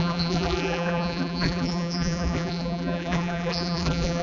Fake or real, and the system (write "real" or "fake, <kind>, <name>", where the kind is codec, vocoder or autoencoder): fake, vocoder, BigVGAN v2